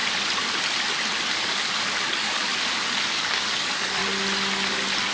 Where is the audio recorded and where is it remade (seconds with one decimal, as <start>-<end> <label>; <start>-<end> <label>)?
0.0-1.3 recorded; 1.3-2.5 remade; 2.5-3.1 recorded; 3.1-4.0 remade; 4.0-5.1 recorded